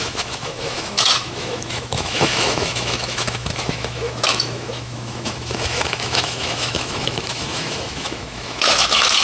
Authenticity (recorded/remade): remade